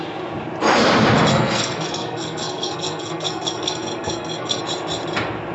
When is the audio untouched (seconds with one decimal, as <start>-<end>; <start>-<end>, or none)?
0.0-1.3; 4.6-5.5